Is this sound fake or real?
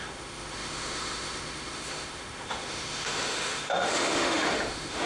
fake